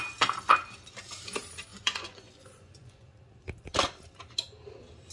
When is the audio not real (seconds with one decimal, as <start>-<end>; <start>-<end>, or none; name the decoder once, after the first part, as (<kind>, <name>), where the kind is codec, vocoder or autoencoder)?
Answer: 1.7-3.1 (vocoder, Vocos)

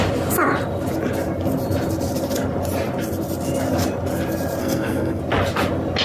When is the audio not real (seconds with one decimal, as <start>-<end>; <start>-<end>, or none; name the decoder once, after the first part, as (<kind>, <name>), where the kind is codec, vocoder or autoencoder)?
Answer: 4.6-5.2 (codec, SNAC)

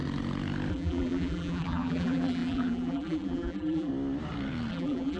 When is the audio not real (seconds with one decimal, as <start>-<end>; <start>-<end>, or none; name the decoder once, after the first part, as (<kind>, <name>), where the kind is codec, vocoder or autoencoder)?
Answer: 0.7-3.9 (vocoder, BigVGAN v2); 4.7-5.2

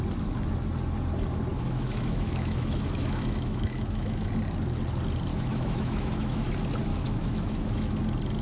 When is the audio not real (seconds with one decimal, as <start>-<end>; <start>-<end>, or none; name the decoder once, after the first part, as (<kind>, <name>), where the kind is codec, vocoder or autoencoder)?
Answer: 1.5-4.3 (autoencoder, DAC-VAE); 5.3-6.5; 6.9-8.0

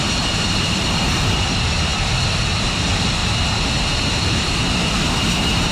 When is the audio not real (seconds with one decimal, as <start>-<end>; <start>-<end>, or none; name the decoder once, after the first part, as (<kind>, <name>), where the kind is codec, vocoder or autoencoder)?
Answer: 0.0-3.2 (vocoder, BigVGAN v2); 4.2-5.7

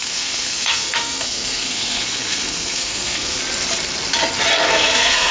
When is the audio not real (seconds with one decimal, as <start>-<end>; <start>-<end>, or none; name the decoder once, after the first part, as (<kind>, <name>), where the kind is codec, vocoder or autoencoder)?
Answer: 0.0-3.4 (codec, SNAC); 4.6-5.3

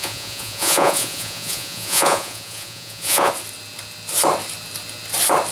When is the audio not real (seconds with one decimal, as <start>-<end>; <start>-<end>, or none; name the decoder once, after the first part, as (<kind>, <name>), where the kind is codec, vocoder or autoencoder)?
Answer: 0.0-3.3 (vocoder, Vocos)